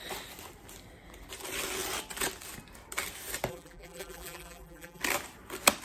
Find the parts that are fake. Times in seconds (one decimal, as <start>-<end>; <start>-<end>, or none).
3.5-5.0